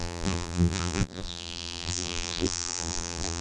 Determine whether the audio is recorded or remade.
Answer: remade